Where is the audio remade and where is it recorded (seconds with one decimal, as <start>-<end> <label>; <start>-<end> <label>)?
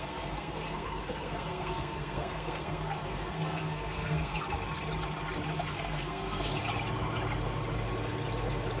0.0-4.4 remade; 4.4-5.7 recorded; 5.7-6.5 remade; 6.5-8.8 recorded